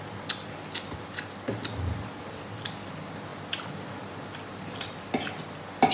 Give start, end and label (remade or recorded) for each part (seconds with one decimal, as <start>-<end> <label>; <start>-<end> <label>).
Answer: 0.0-5.9 recorded